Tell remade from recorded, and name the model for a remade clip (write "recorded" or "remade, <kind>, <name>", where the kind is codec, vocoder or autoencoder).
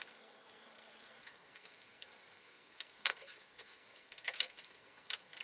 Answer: remade, codec, SNAC